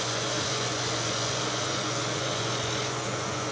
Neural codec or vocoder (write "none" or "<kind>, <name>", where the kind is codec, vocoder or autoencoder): vocoder, Vocos